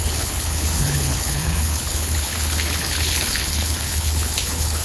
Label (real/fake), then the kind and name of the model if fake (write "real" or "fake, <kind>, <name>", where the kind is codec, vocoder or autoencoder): fake, codec, HILCodec